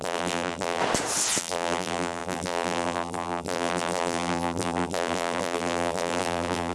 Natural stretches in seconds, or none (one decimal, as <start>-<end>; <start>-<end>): 0.8-1.4

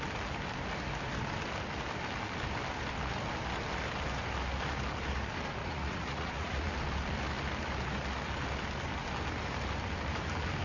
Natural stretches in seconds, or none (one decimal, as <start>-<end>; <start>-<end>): 0.0-5.6; 6.7-10.6

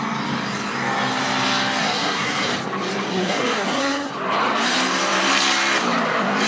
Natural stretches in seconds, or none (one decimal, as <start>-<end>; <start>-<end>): 0.0-1.8; 2.5-3.1; 4.1-6.5

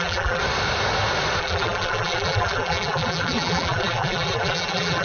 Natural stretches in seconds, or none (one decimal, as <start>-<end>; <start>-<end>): 0.4-1.4

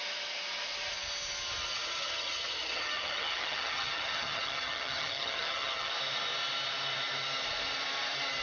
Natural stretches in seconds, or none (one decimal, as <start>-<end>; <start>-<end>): 0.0-1.7; 5.9-8.4